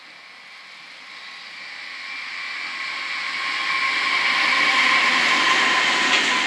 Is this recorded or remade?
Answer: recorded